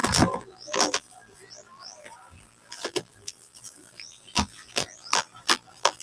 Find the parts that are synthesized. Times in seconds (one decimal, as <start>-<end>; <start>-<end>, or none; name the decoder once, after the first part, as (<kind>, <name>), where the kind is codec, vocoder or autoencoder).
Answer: 0.0-6.0 (vocoder, BigVGAN v2)